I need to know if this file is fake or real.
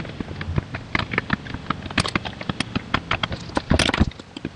real